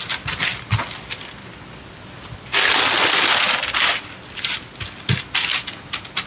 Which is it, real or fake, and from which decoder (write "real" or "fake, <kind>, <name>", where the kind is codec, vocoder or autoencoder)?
real